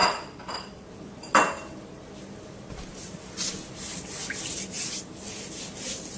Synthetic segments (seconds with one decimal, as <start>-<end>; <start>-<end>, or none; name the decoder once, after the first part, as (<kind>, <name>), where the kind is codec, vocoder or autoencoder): 0.0-0.9 (vocoder, BigVGAN v2)